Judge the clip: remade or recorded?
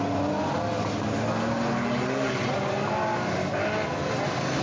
recorded